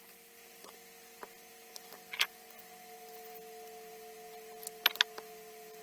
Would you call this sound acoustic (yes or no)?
yes